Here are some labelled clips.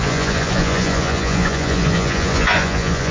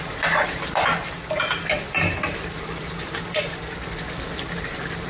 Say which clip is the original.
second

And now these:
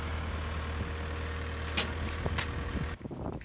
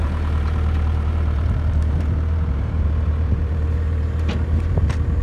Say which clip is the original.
first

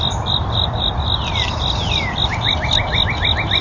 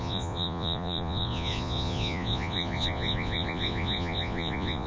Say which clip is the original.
first